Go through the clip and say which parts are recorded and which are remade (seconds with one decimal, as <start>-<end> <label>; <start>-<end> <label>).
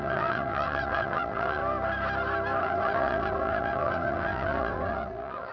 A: 0.0-1.6 remade; 1.6-2.6 recorded; 2.6-5.5 remade